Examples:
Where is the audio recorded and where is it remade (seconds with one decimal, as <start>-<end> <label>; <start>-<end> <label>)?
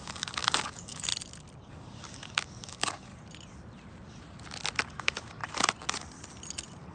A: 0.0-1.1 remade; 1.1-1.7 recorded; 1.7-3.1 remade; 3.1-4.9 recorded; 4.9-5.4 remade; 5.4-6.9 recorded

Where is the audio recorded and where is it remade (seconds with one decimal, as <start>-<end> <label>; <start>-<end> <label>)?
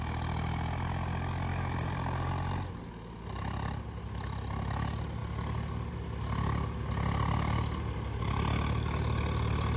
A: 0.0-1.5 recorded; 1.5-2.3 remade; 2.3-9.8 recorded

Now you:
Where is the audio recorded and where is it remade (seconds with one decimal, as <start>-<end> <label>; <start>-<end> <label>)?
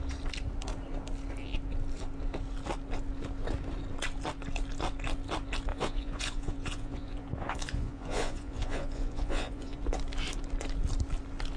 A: 0.0-5.7 recorded; 5.7-9.8 remade; 9.8-11.6 recorded